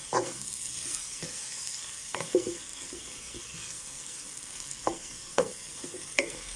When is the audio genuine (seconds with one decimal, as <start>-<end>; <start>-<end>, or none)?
none